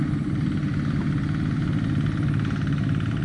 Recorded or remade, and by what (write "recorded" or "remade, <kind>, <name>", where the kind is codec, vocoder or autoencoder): recorded